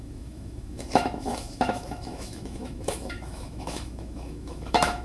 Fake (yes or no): yes